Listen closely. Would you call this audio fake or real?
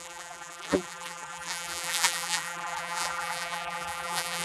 fake